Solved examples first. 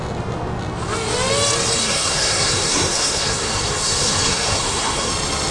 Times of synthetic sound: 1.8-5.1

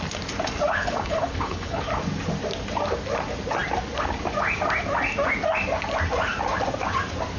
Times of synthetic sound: 0.7-1.8

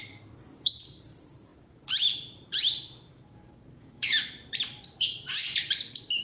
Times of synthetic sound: 0.0-5.4

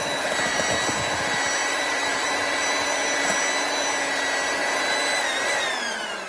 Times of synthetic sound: 1.6-2.6

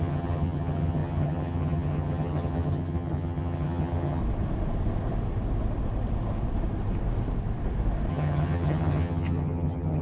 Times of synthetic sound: 0.0-4.2; 8.1-10.0

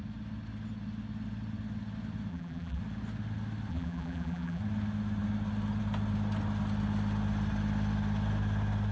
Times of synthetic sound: 2.3-2.8; 3.7-4.6

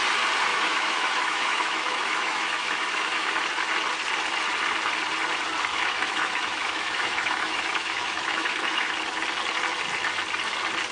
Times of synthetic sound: 0.5-3.3; 5.7-8.9

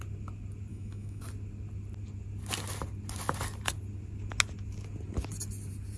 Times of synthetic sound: 0.7-1.2